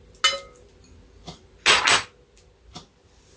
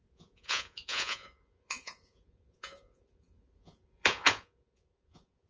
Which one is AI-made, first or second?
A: second